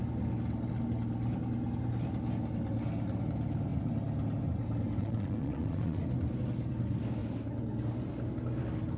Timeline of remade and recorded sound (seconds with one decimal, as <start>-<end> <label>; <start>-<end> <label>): 0.0-5.0 recorded; 5.0-6.0 remade; 6.0-9.0 recorded